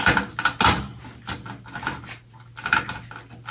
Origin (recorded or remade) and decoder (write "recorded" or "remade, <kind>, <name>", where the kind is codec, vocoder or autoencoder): recorded